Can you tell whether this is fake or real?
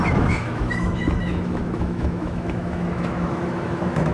fake